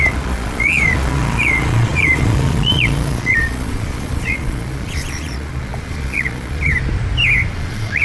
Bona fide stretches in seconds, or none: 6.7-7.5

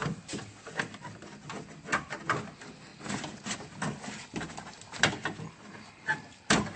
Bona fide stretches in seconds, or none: 0.0-6.8